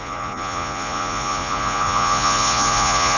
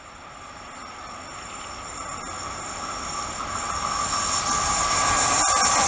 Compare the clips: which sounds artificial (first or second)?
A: first